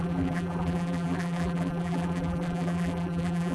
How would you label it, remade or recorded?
remade